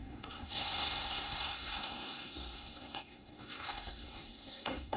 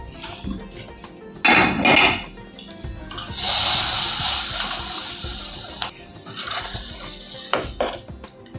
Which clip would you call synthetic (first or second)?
first